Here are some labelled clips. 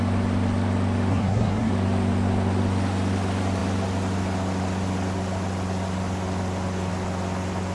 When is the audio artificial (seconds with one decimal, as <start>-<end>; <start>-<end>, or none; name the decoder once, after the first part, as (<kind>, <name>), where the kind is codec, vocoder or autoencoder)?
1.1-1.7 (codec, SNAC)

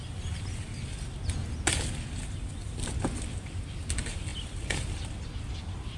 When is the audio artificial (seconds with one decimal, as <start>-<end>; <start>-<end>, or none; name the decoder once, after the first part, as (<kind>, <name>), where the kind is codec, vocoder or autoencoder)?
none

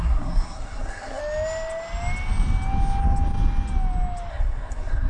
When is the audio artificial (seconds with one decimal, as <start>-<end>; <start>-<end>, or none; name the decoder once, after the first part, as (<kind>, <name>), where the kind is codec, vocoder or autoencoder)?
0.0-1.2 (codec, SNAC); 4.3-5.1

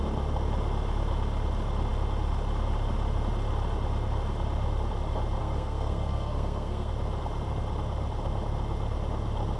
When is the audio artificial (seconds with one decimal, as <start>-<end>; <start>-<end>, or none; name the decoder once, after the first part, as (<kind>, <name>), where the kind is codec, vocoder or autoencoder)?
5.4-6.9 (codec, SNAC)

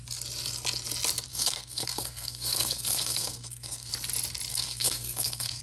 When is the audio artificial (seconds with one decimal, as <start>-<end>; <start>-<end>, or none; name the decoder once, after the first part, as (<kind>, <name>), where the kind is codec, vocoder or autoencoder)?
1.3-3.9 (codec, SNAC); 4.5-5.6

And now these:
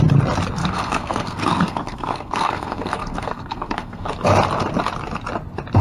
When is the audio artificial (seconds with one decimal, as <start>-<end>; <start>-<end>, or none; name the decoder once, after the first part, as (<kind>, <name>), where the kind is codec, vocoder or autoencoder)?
0.6-4.1 (codec, SNAC)

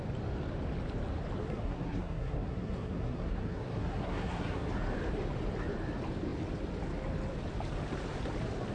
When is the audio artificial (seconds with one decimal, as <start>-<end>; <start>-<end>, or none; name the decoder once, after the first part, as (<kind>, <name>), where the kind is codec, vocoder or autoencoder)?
1.4-4.7 (codec, SNAC)